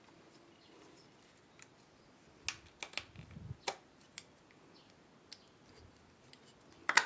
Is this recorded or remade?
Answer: recorded